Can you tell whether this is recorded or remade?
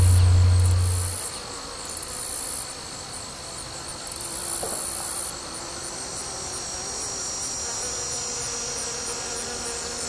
recorded